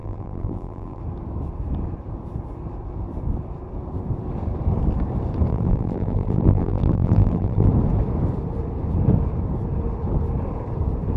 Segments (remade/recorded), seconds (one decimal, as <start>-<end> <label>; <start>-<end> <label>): 0.0-1.0 remade; 1.0-5.5 recorded; 5.5-7.7 remade; 7.7-11.2 recorded